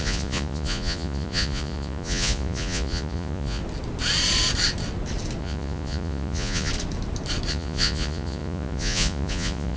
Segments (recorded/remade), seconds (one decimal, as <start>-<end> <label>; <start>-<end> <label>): 0.0-3.6 remade; 3.6-5.4 recorded; 5.4-6.7 remade; 6.7-7.5 recorded; 7.5-9.8 remade